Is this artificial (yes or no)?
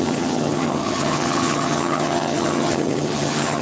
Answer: yes